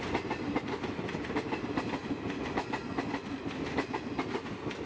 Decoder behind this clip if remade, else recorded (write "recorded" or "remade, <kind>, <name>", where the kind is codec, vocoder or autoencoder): recorded